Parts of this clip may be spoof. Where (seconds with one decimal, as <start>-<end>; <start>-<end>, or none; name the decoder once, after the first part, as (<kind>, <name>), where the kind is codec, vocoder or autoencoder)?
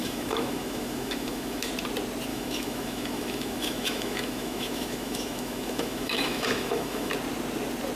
0.0-1.7 (autoencoder, DAC-VAE); 2.3-7.1